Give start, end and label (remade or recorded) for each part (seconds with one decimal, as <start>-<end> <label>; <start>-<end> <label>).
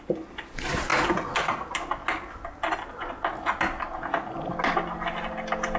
0.0-5.8 recorded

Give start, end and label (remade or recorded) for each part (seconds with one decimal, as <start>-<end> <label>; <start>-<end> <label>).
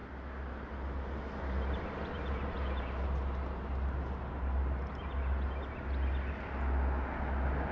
0.0-2.8 remade; 2.8-7.7 recorded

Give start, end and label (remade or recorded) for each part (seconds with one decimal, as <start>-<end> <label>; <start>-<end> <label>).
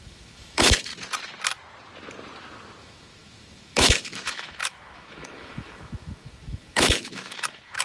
0.0-0.9 remade; 0.9-2.8 recorded; 2.8-7.8 remade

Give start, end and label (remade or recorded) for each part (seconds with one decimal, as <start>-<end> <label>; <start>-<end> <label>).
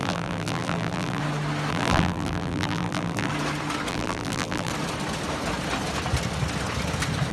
0.0-1.2 remade; 1.2-1.7 recorded; 1.7-3.3 remade; 3.3-3.9 recorded; 3.9-4.7 remade; 4.7-7.3 recorded